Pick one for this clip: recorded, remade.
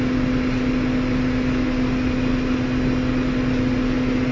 recorded